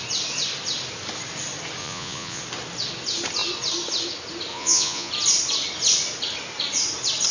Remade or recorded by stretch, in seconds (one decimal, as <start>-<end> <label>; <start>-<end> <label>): 0.0-1.8 recorded; 1.8-2.4 remade; 2.4-4.5 recorded; 4.5-5.1 remade; 5.1-7.3 recorded